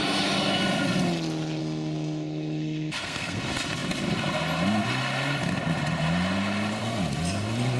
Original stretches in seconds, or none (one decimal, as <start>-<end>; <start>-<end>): 0.0-1.6; 3.4-7.8

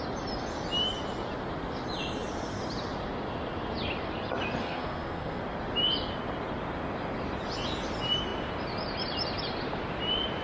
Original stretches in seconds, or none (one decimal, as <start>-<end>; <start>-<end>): 0.0-4.6; 5.4-10.4

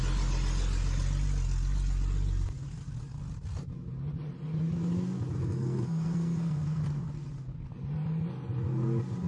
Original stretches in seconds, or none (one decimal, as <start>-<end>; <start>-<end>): 0.0-5.4; 6.8-9.3

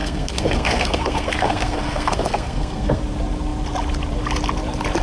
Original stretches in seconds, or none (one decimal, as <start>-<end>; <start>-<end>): 3.0-5.0

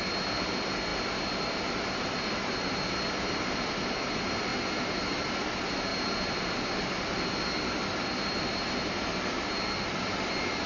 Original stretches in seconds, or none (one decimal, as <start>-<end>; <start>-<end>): 0.0-10.7

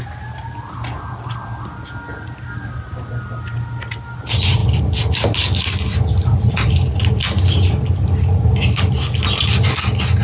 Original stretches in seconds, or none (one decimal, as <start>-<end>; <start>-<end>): 0.0-10.2

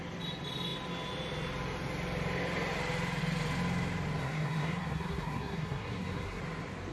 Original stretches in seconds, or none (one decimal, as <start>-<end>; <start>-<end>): 0.0-4.2; 6.4-6.9

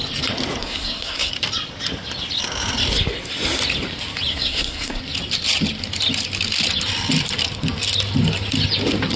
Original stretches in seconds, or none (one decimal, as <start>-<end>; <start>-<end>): 0.0-0.6; 1.3-4.3; 5.0-9.2